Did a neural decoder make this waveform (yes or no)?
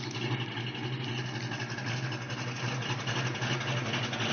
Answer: no